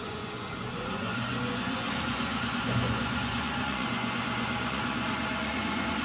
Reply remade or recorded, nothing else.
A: remade